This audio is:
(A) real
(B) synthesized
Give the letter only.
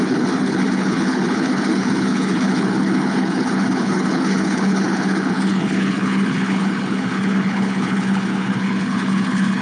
B